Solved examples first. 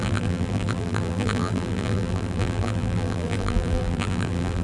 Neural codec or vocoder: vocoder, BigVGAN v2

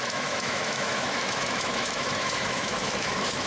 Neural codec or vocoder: autoencoder, DAC-VAE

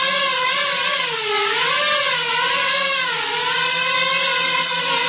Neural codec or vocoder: none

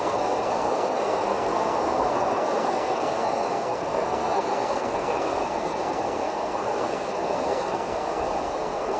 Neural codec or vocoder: codec, SNAC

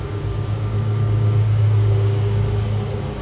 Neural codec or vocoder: codec, DAC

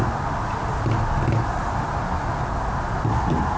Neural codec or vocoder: none